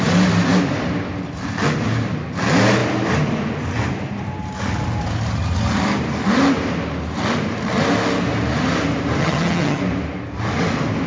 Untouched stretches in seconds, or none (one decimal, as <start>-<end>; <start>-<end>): 0.0-9.2; 9.8-11.1

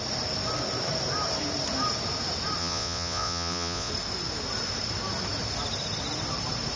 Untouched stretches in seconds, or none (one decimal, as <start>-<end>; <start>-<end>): 0.0-2.6; 3.9-6.8

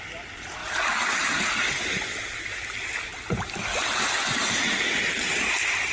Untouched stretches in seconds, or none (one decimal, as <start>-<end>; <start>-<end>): 0.0-5.9

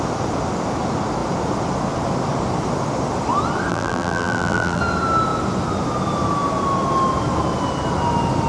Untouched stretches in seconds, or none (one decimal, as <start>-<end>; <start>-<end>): 0.0-3.7; 4.8-8.5